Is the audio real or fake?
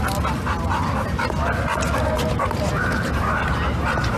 real